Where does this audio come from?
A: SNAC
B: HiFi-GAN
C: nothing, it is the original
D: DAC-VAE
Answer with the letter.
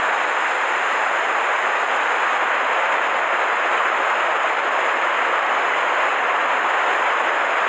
C